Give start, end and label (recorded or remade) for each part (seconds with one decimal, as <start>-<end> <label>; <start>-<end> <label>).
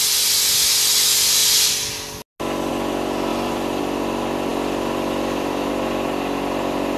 0.0-3.3 recorded; 3.3-3.8 remade; 3.8-4.5 recorded; 4.5-5.7 remade; 5.7-7.0 recorded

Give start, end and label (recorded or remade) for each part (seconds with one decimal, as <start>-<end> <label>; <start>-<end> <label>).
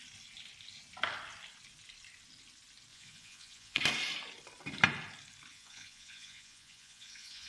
0.0-2.9 recorded; 2.9-3.8 remade; 3.8-5.5 recorded; 5.5-7.5 remade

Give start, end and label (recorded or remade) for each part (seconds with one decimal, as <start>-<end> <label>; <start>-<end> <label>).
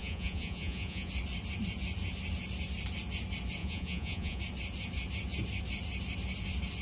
0.0-1.1 remade; 1.1-3.6 recorded; 3.6-4.4 remade; 4.4-6.8 recorded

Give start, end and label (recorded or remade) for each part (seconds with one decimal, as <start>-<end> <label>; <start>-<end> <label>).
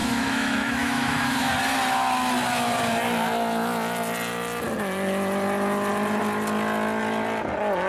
0.0-1.5 remade; 1.5-7.9 recorded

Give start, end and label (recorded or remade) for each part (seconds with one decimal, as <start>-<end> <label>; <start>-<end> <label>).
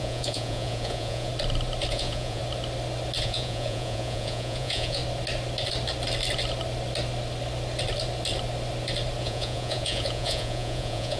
0.0-1.3 remade; 1.3-1.9 recorded; 1.9-2.4 remade; 2.4-3.2 recorded; 3.2-5.0 remade; 5.0-9.2 recorded; 9.2-11.2 remade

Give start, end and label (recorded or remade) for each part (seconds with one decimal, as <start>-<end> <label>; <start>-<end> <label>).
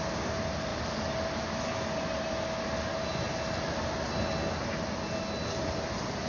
0.0-6.3 recorded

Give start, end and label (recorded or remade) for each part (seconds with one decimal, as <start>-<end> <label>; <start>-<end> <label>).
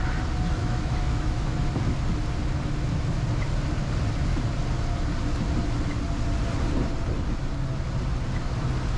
0.0-0.6 recorded; 0.6-1.7 remade; 1.7-9.0 recorded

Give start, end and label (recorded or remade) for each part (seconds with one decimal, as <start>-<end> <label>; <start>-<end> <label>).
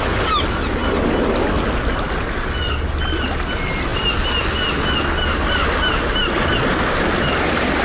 0.0-7.8 recorded